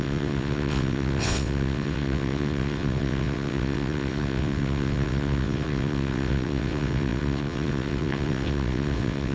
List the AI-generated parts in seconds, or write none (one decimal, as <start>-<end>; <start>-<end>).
0.0-9.3

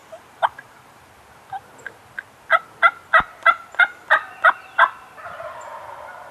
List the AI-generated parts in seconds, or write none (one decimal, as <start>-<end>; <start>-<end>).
0.0-1.0

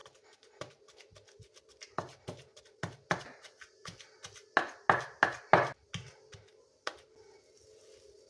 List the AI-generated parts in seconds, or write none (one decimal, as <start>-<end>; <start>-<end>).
none

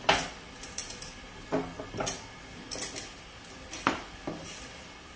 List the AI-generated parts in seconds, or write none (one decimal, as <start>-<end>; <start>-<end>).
none

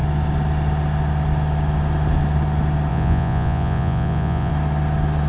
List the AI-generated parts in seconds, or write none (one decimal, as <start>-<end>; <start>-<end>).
2.9-4.5